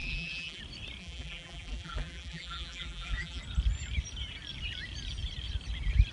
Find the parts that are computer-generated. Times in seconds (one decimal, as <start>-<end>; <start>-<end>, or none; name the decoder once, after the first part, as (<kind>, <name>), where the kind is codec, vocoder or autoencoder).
0.0-0.6 (vocoder, BigVGAN v2); 1.0-3.4